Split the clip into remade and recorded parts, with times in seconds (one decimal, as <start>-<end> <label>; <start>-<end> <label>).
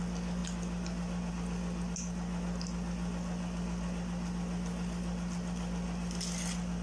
0.0-6.8 recorded